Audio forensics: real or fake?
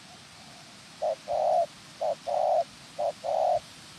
real